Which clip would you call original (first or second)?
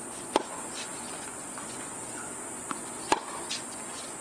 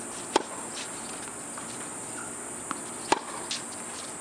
second